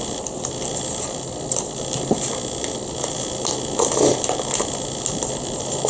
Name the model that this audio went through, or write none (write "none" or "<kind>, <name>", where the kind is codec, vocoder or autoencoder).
none